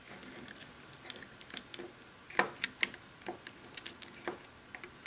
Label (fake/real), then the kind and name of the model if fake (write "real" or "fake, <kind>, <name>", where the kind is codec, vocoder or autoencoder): real